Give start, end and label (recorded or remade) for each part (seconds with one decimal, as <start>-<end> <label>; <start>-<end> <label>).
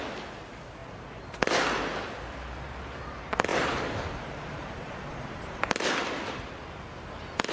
0.0-3.5 recorded; 3.5-5.7 remade; 5.7-7.5 recorded